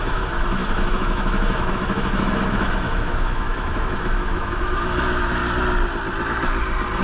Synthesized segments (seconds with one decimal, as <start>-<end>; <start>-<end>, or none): 0.0-5.4